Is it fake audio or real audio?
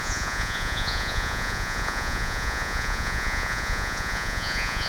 fake